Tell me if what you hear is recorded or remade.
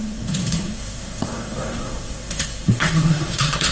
remade